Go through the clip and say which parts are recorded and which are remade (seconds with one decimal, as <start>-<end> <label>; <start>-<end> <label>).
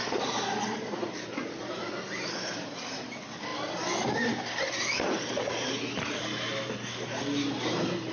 0.0-8.1 recorded